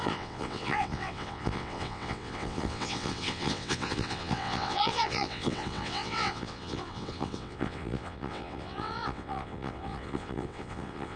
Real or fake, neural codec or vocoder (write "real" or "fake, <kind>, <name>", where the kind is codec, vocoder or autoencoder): fake, vocoder, WaveNeXt